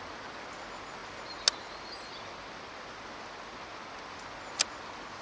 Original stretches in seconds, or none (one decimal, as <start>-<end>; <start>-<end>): 0.0-5.2